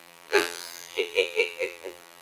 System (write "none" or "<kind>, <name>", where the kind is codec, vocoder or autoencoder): vocoder, BigVGAN v2